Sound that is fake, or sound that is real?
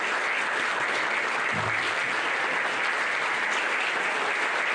real